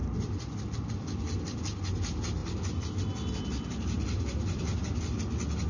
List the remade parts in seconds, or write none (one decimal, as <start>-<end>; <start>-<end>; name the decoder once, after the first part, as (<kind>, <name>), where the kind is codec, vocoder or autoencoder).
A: 0.0-0.6 (vocoder, BigVGAN v2)